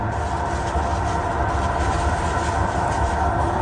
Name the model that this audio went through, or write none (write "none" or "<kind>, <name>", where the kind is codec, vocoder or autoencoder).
none